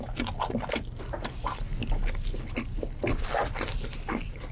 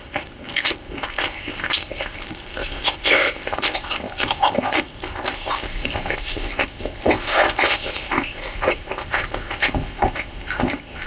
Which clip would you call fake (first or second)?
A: second